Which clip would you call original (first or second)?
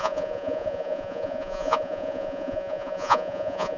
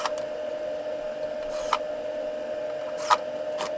second